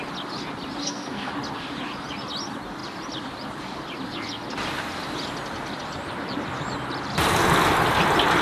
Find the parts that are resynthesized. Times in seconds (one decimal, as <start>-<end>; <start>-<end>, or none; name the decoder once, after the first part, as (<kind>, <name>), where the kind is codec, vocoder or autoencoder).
0.8-1.3 (codec, SNAC)